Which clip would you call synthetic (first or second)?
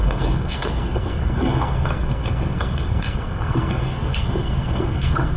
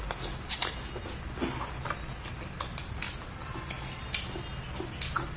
first